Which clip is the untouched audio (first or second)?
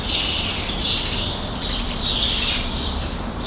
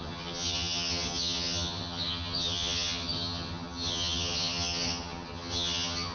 first